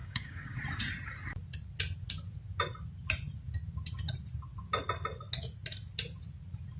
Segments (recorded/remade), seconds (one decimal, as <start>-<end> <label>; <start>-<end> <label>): 0.0-0.6 remade; 0.6-6.8 recorded